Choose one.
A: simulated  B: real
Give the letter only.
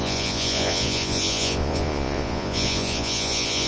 A